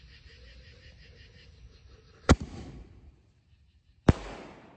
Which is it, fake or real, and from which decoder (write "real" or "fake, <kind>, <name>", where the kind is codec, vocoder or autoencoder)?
real